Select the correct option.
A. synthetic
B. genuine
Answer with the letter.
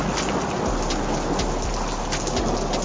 B